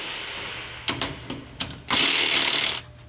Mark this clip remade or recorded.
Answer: recorded